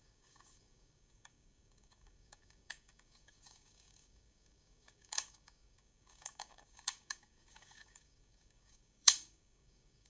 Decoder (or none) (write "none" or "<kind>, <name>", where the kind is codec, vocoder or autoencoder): codec, DAC